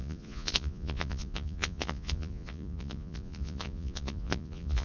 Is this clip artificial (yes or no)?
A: yes